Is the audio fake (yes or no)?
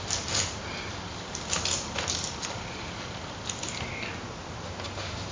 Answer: no